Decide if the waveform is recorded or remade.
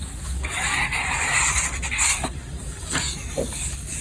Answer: remade